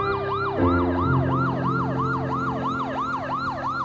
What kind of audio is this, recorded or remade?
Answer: recorded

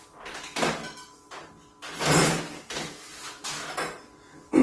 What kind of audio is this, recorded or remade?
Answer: recorded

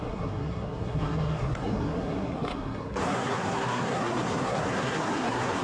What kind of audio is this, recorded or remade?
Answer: remade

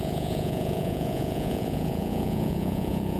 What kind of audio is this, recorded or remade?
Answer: remade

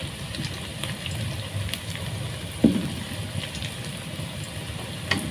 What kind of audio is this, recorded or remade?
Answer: recorded